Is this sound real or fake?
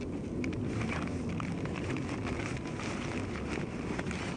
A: real